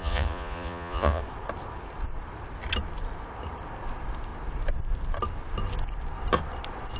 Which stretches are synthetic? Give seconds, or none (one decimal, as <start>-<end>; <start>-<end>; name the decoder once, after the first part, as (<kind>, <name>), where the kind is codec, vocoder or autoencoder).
0.0-1.2 (vocoder, Vocos)